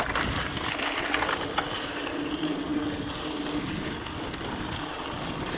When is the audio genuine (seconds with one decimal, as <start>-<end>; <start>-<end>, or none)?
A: 0.0-5.6